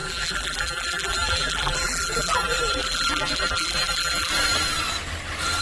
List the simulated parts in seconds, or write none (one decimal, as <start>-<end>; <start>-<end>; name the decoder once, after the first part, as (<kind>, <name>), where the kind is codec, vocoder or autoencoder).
0.0-4.3 (vocoder, BigVGAN v2)